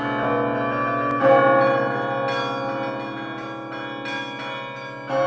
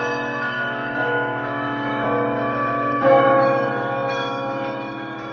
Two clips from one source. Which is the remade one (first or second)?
second